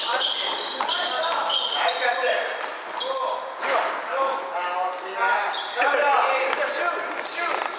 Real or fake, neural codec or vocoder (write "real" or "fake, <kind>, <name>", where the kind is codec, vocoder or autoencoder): real